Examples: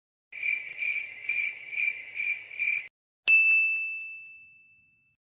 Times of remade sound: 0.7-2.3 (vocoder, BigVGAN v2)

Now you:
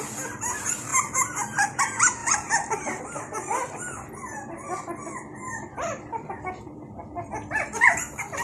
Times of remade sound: 0.9-1.8 (vocoder, BigVGAN v2); 2.2-3.0; 5.0-7.3

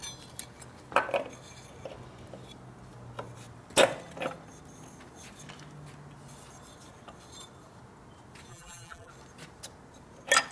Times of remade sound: 8.5-9.1 (vocoder, BigVGAN v2)

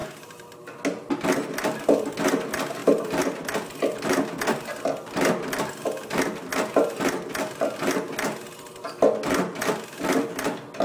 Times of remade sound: 0.0-0.7 (vocoder, BigVGAN v2)

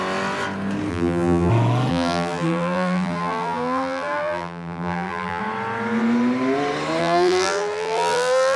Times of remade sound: 0.9-1.5 (vocoder, BigVGAN v2); 1.9-5.4; 7.0-8.6

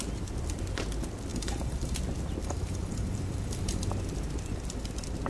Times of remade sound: 1.3-2.0 (vocoder, BigVGAN v2); 2.4-3.9

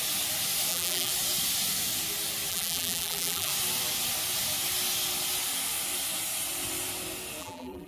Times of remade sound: 0.7-1.1 (vocoder, BigVGAN v2); 2.5-3.5; 7.4-7.9